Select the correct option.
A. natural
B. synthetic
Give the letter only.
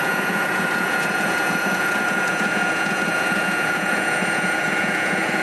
B